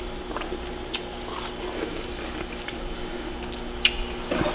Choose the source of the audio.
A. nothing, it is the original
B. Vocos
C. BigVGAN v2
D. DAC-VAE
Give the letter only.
A